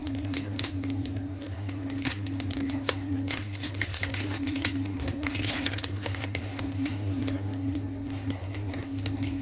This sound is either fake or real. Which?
fake